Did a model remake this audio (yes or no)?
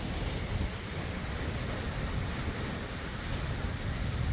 no